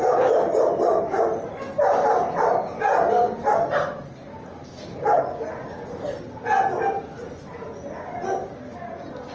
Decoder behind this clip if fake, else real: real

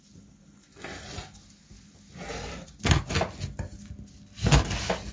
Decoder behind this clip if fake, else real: real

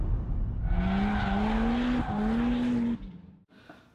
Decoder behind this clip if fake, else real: real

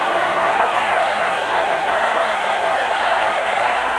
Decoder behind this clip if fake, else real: fake, codec, SNAC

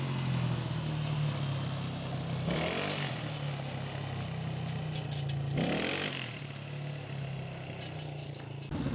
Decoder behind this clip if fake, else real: real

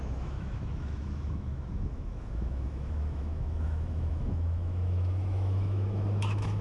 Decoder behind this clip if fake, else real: fake, autoencoder, DAC-VAE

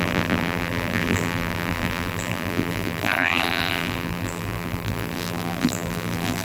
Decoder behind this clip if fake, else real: fake, vocoder, BigVGAN v2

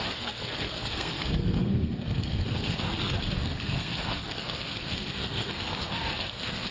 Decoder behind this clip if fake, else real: fake, codec, SNAC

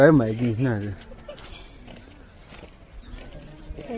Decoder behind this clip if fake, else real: real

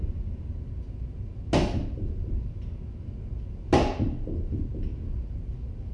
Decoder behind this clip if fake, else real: real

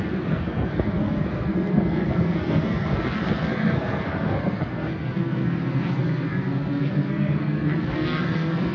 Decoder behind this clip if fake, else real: fake, codec, SNAC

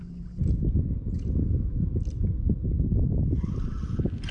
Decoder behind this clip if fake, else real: real